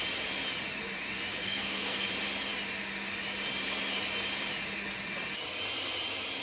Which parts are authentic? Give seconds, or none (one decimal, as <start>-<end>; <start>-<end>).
0.0-1.4; 2.1-6.4